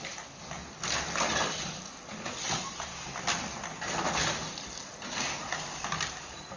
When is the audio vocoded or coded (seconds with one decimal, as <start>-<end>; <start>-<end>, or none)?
none